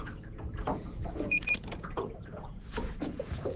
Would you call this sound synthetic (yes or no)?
yes